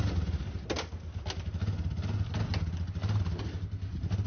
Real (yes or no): yes